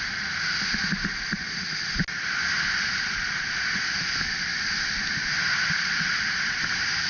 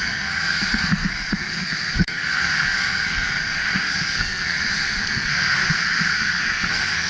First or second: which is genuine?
first